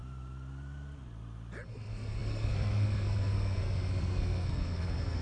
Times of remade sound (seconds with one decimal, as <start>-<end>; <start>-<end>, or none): 1.7-5.2